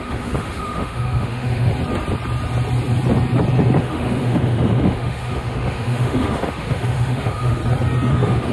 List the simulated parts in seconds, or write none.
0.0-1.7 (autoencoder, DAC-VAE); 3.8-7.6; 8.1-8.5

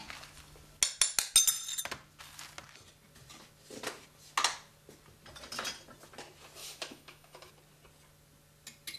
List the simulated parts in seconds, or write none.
6.6-7.5 (autoencoder, DAC-VAE)